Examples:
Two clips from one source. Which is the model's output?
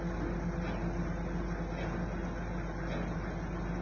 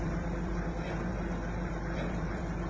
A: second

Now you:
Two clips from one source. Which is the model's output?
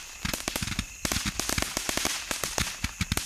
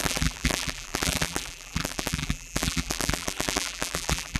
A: second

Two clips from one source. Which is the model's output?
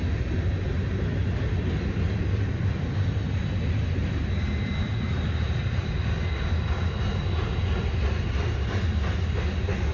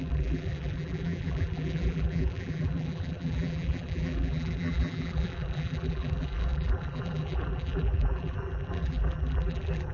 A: second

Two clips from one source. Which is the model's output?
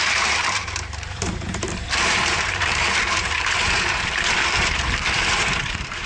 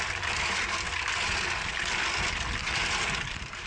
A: first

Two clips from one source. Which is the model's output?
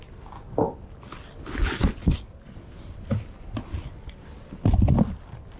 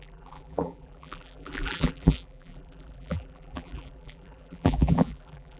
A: second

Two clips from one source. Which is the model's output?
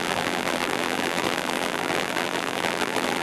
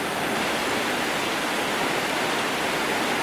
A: first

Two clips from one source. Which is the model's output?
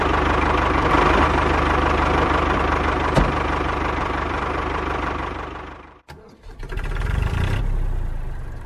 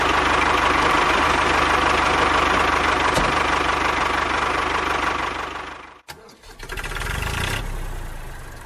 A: first